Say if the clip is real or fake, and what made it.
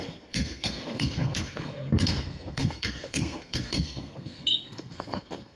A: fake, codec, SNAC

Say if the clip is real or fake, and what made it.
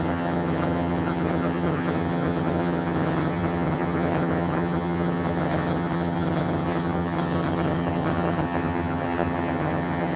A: fake, vocoder, HiFi-GAN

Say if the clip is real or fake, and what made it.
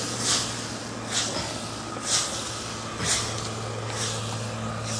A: real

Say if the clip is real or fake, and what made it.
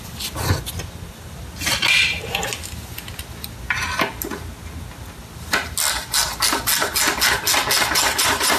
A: real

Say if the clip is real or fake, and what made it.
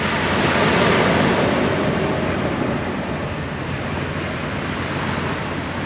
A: real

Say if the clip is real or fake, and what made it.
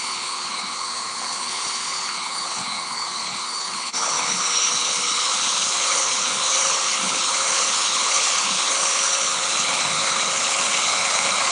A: fake, codec, HILCodec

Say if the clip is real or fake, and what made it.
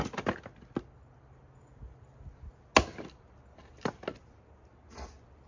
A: real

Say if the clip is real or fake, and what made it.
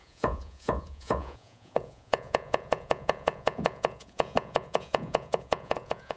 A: fake, vocoder, Vocos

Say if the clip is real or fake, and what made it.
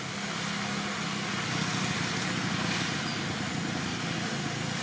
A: real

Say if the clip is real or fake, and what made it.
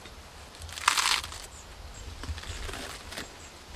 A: real